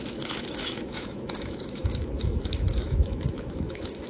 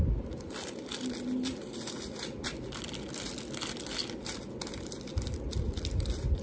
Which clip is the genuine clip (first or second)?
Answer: second